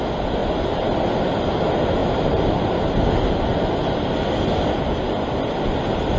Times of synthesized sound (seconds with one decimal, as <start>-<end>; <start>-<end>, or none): 0.4-1.6